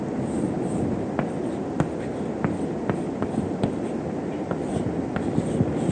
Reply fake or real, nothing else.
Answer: real